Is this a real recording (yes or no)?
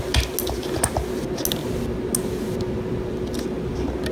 yes